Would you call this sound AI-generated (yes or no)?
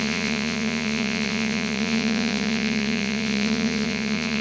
yes